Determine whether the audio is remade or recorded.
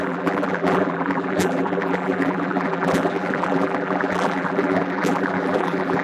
remade